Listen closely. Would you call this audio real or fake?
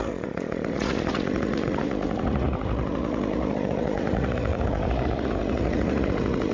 fake